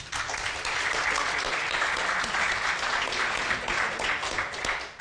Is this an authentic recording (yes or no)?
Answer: yes